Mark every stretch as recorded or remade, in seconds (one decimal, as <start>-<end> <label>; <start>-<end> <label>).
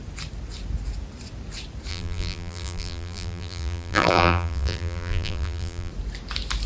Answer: 0.0-1.9 recorded; 1.9-5.9 remade; 5.9-6.7 recorded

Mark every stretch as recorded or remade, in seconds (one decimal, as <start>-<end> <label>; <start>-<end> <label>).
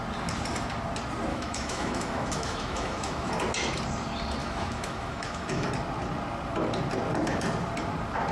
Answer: 0.0-1.3 recorded; 1.3-3.3 remade; 3.3-4.4 recorded; 4.4-5.7 remade; 5.7-8.3 recorded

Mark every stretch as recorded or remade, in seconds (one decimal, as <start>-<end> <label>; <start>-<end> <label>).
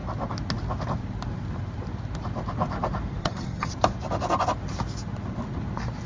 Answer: 0.0-3.2 recorded; 3.2-3.7 remade; 3.7-6.1 recorded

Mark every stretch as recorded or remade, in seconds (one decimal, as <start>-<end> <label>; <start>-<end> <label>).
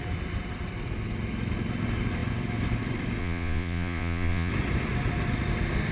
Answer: 0.0-3.2 recorded; 3.2-4.5 remade; 4.5-5.9 recorded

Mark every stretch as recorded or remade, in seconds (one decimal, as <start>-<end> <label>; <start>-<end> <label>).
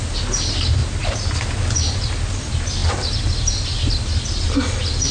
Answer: 0.0-5.1 recorded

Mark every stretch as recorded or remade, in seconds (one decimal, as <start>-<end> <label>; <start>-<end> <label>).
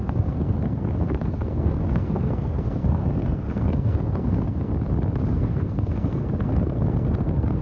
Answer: 0.0-4.7 remade; 4.7-5.3 recorded; 5.3-7.6 remade